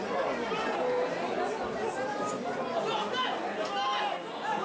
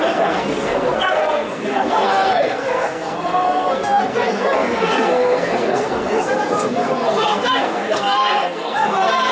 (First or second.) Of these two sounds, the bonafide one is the first